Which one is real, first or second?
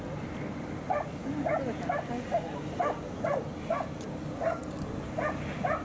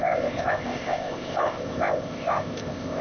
first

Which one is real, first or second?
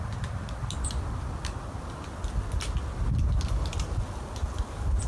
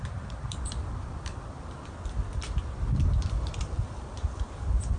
first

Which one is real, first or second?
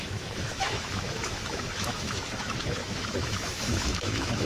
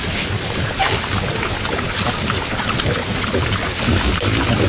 second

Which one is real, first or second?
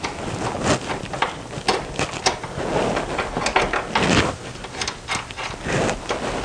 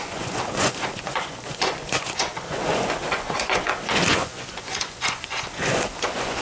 first